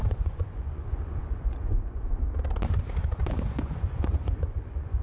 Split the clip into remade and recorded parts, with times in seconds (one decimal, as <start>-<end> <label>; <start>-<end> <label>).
0.0-2.2 remade; 2.2-3.2 recorded; 3.2-5.0 remade